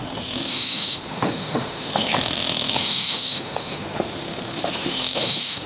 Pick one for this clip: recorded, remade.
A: remade